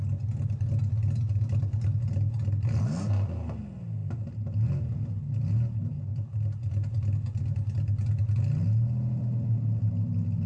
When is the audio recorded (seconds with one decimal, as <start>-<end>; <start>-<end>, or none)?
0.0-10.5